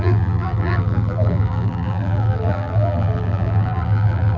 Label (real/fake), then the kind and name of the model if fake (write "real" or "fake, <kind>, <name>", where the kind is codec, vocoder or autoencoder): fake, vocoder, BigVGAN v2